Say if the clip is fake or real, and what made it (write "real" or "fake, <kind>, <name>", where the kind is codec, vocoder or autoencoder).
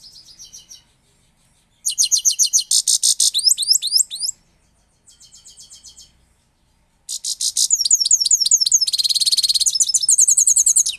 real